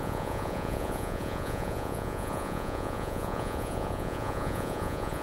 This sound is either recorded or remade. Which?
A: remade